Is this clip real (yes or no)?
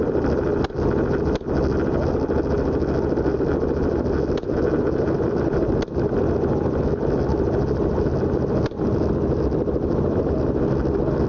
yes